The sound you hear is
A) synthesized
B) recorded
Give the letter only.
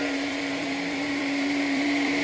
A